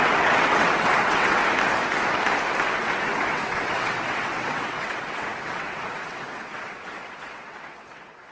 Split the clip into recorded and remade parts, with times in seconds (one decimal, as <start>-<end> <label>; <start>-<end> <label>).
0.0-1.4 remade; 1.4-2.8 recorded; 2.8-8.3 remade